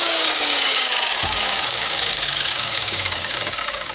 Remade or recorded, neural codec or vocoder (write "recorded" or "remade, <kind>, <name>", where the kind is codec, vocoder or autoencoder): remade, codec, DAC